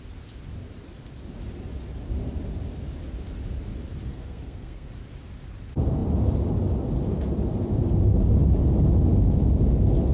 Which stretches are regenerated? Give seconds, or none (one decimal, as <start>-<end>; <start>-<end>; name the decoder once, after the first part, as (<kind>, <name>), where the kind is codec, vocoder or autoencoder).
4.1-4.9 (codec, SNAC)